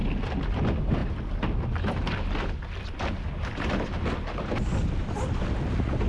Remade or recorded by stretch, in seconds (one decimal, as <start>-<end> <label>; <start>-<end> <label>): 0.0-6.1 recorded